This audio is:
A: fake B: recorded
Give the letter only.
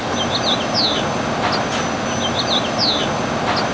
B